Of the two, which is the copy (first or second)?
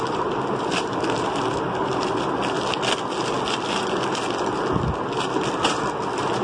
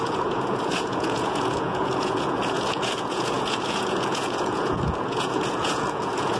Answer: second